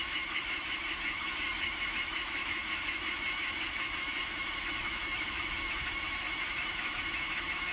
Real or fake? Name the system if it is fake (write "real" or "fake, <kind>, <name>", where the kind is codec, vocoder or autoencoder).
fake, autoencoder, DAC-VAE